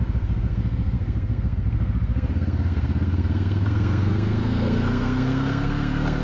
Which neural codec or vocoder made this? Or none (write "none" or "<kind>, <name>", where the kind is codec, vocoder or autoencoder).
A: codec, SNAC